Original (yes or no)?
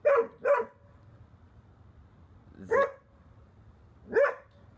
yes